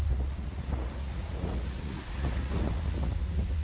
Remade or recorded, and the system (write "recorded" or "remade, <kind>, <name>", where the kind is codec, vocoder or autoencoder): remade, vocoder, Vocos